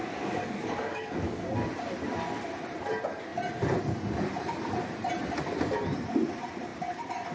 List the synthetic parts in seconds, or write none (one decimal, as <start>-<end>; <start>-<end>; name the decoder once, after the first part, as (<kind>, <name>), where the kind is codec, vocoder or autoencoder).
0.0-1.5 (codec, DAC)